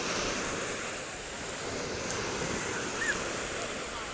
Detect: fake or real real